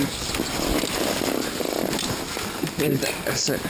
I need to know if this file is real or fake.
real